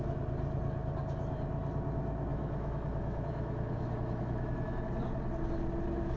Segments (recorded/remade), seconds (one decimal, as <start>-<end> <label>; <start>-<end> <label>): 0.0-2.3 recorded; 2.3-4.8 remade; 4.8-6.2 recorded